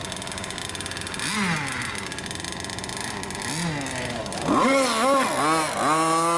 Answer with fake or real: real